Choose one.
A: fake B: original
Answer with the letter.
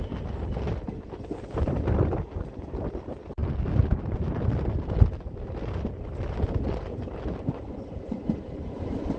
B